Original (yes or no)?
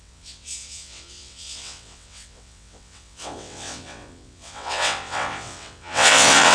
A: no